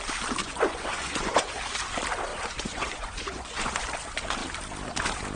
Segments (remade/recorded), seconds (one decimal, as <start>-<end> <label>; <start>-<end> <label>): 0.0-0.4 recorded; 0.4-1.6 remade; 1.6-2.3 recorded; 2.3-3.8 remade; 3.8-5.4 recorded